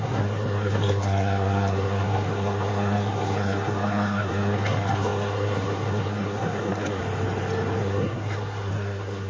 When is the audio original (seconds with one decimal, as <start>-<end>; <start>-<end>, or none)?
7.0-7.8